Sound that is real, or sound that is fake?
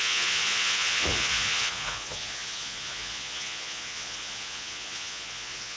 fake